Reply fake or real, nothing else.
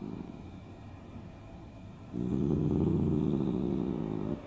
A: real